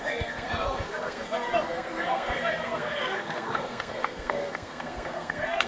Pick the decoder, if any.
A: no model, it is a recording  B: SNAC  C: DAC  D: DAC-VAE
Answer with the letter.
B